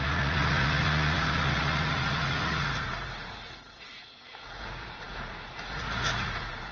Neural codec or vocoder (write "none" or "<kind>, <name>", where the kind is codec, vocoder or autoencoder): vocoder, Vocos